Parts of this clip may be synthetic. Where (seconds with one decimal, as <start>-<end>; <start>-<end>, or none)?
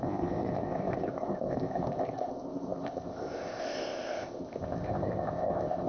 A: 0.0-5.9